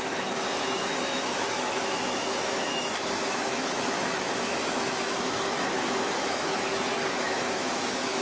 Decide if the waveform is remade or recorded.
remade